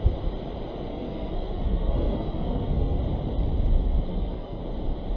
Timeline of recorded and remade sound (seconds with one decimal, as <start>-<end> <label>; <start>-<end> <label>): 0.0-0.9 recorded; 0.9-3.0 remade; 3.0-4.1 recorded; 4.1-4.6 remade; 4.6-5.2 recorded